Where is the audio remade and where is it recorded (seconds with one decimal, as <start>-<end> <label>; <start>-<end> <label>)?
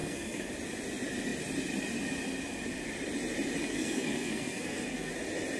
0.0-0.5 remade; 0.5-3.6 recorded; 3.6-5.1 remade; 5.1-5.6 recorded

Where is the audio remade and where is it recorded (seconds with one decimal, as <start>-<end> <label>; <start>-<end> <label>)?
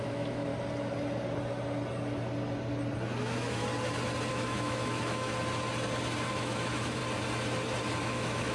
0.0-0.5 remade; 0.5-3.2 recorded; 3.2-3.6 remade; 3.6-4.3 recorded; 4.3-5.3 remade; 5.3-6.3 recorded; 6.3-7.0 remade; 7.0-8.0 recorded; 8.0-8.5 remade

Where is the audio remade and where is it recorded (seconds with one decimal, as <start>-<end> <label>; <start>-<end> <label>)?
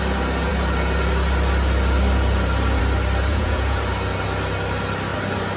0.0-3.3 recorded; 3.3-3.8 remade; 3.8-5.6 recorded